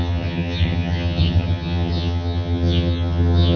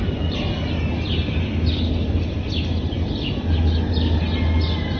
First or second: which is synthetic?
first